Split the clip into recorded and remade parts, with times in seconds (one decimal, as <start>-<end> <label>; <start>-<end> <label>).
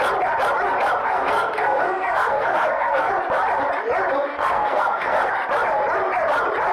0.0-1.0 recorded; 1.0-3.1 remade; 3.1-4.3 recorded; 4.3-5.3 remade; 5.3-6.7 recorded